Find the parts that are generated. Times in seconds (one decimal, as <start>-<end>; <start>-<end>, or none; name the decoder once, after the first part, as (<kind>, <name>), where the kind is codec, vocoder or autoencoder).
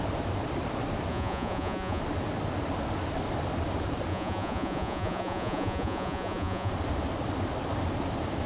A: 1.1-2.0 (vocoder, Vocos); 4.1-6.7